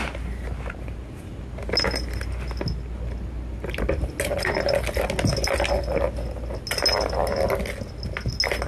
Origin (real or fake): real